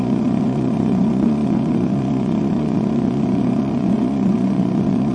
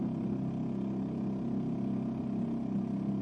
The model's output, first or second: first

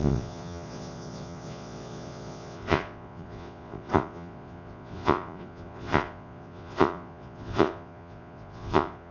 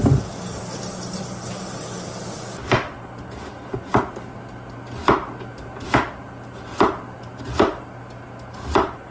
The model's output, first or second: first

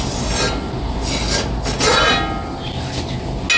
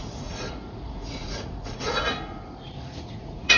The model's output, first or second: second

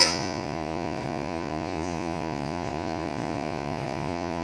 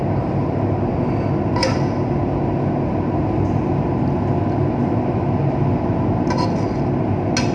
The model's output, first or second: first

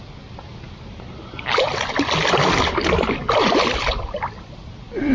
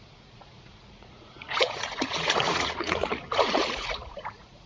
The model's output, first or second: second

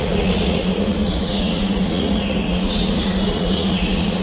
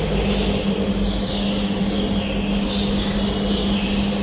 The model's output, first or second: first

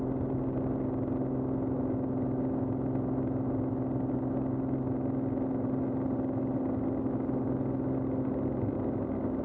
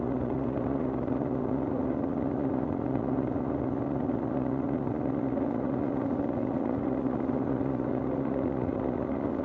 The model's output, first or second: second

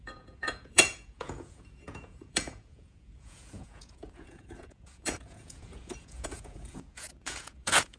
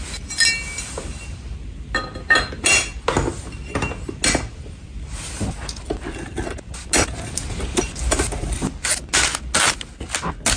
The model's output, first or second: first